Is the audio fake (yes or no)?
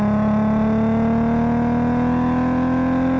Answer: no